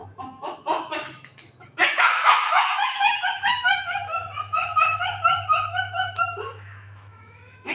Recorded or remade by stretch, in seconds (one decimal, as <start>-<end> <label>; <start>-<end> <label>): 0.0-7.7 remade